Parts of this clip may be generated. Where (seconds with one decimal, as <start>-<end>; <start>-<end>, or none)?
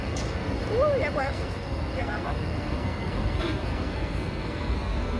0.0-0.6; 1.2-5.2